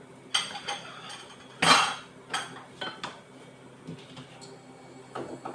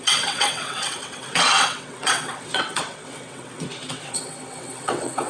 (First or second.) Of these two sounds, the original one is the first